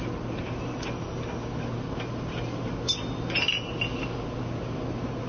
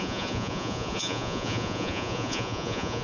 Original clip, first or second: first